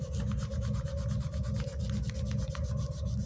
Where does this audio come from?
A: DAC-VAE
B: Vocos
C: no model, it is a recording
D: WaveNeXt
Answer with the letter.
C